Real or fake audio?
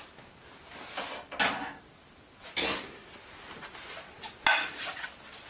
real